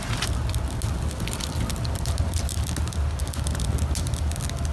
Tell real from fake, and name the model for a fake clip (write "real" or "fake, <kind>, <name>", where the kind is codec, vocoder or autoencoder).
real